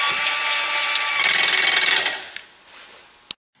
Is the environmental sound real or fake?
real